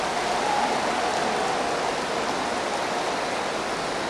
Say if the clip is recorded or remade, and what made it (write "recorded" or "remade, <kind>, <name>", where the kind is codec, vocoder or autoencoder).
recorded